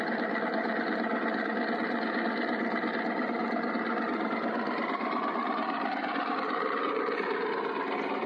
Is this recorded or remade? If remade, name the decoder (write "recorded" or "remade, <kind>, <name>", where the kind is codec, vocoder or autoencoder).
remade, vocoder, BigVGAN v2